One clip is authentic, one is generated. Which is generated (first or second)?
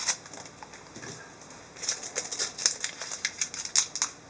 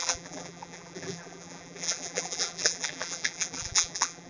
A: second